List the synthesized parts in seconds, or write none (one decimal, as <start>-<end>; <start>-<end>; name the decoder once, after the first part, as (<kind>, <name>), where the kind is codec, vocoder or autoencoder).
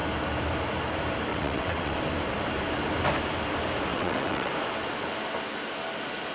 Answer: 1.3-2.0 (vocoder, WaveNeXt); 3.9-4.5